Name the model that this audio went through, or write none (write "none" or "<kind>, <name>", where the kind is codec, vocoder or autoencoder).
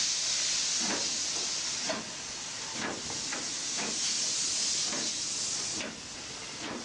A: none